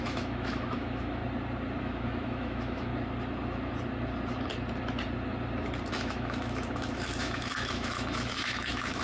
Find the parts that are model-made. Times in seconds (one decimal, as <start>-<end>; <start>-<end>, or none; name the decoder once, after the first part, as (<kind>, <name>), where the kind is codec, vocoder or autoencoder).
0.0-1.2 (autoencoder, DAC-VAE); 1.8-2.9; 5.9-9.0